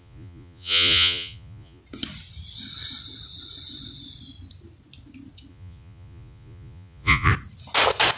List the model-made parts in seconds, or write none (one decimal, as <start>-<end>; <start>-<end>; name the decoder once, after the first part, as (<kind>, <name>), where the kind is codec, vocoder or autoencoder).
0.0-1.8 (vocoder, Vocos); 5.5-7.3